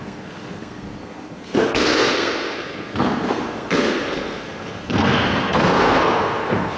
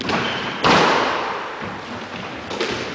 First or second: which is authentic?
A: second